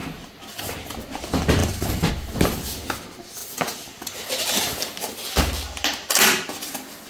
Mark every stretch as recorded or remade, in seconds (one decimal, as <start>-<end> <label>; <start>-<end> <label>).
0.0-1.6 recorded; 1.6-2.1 remade; 2.1-7.1 recorded